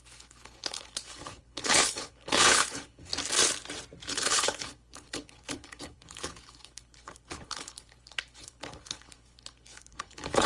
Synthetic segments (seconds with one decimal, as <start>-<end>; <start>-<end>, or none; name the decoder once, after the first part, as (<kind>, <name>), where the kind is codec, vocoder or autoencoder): 0.0-3.1 (codec, HILCodec); 4.1-10.5